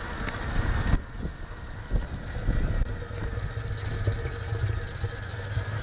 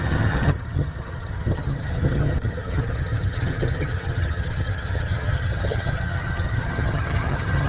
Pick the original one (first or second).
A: first